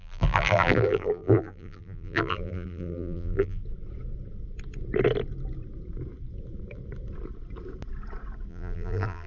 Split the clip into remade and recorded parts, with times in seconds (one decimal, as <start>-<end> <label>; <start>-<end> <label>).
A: 0.0-3.6 remade; 3.6-8.5 recorded; 8.5-9.3 remade